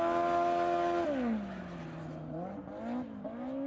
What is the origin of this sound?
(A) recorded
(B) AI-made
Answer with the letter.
A